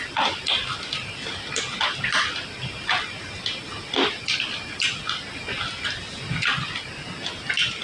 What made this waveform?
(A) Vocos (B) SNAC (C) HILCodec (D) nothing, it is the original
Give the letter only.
D